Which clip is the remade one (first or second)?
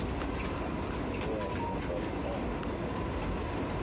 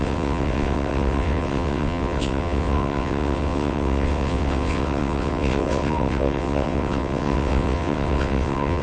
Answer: second